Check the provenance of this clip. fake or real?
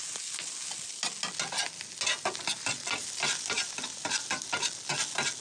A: real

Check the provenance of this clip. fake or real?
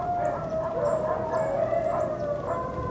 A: real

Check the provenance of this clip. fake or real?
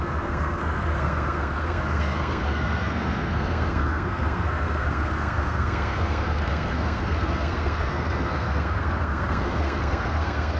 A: fake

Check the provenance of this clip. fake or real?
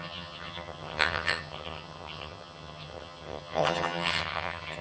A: fake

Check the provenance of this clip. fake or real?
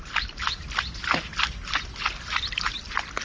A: real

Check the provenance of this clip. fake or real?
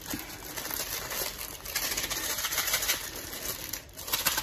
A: real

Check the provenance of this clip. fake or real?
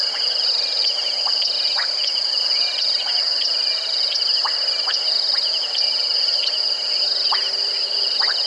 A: real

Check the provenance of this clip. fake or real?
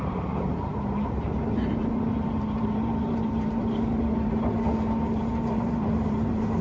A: fake